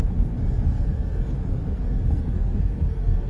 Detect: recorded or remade remade